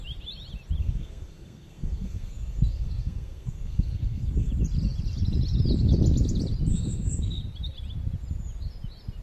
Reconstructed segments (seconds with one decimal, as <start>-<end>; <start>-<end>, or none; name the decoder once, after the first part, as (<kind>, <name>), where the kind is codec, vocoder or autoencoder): 0.8-4.5 (codec, SNAC); 6.7-7.4